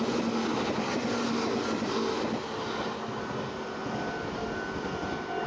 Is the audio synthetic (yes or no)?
no